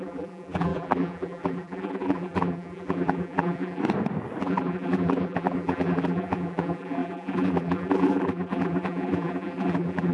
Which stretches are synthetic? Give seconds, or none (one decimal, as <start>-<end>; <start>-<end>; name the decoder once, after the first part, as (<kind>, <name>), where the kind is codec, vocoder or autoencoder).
0.0-3.8 (vocoder, BigVGAN v2); 4.4-10.1